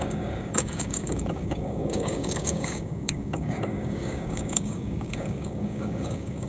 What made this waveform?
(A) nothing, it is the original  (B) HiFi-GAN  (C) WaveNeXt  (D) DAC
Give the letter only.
D